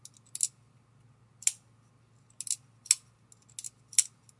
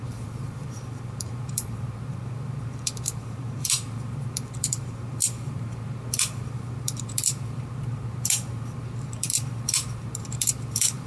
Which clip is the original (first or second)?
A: first